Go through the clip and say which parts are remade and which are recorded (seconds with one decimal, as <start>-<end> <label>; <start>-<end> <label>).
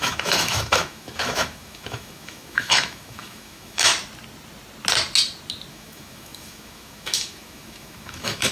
0.0-3.9 remade; 3.9-5.7 recorded; 5.7-8.5 remade